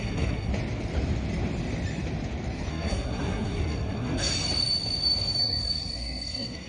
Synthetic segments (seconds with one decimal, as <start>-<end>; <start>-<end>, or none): 0.0-0.5; 2.7-4.3; 5.4-6.7